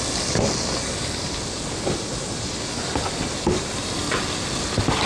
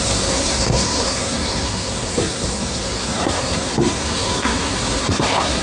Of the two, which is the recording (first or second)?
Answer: first